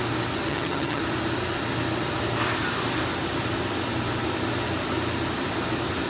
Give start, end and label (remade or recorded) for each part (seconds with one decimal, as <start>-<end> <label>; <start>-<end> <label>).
0.0-0.5 recorded; 0.5-1.0 remade; 1.0-6.1 recorded